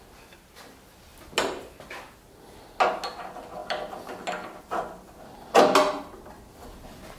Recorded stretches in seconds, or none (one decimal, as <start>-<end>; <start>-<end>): 0.0-7.2